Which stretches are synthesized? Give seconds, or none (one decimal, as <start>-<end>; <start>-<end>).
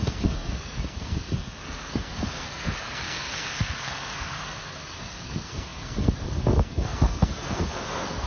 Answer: 0.0-8.3